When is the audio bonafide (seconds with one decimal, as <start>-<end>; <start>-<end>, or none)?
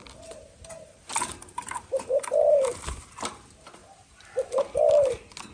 3.3-3.8; 5.1-5.5